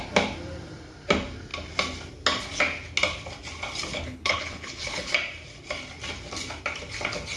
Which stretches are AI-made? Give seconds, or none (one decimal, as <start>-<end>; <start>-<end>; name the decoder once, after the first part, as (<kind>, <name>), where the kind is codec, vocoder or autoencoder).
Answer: 3.9-5.1 (codec, HILCodec)